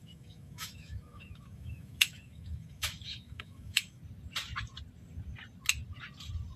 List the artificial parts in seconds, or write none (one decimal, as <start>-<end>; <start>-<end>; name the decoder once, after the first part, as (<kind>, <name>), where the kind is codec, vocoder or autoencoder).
0.0-4.0 (autoencoder, DAC-VAE)